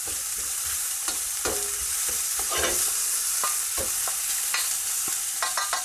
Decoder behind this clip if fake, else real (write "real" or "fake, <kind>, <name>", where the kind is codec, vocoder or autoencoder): real